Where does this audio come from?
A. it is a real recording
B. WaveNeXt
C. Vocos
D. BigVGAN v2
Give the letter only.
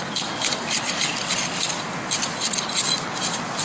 A